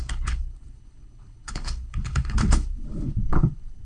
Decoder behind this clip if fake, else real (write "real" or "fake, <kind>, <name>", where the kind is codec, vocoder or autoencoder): fake, codec, HILCodec